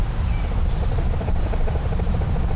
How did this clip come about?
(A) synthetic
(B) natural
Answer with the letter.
B